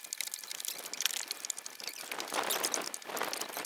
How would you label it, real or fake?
real